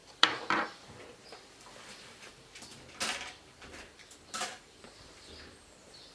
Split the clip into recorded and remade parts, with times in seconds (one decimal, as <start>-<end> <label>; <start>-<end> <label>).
0.0-2.7 remade; 2.7-3.4 recorded; 3.4-6.1 remade